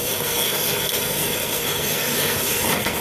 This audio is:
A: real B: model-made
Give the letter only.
B